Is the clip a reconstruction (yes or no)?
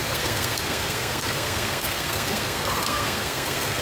yes